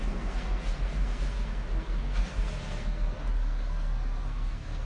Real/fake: fake